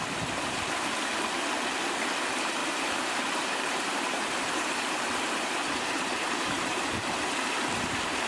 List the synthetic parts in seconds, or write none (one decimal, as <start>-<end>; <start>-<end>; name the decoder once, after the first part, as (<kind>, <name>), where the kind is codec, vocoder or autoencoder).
2.6-7.2 (vocoder, BigVGAN v2)